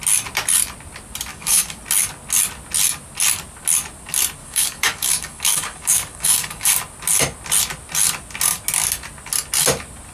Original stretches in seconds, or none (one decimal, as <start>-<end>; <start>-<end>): 0.0-1.3; 1.8-4.4; 6.7-10.1